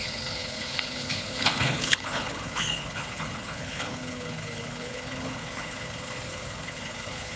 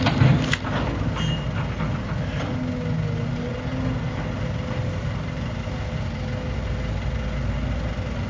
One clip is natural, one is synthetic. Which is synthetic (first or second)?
first